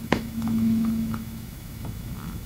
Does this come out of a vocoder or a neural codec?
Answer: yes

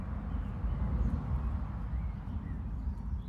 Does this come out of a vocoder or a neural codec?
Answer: no